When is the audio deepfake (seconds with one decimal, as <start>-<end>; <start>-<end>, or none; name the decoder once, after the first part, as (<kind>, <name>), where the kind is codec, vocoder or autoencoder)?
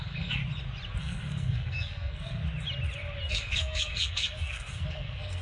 0.0-0.4 (codec, SNAC); 1.0-2.4; 3.3-5.4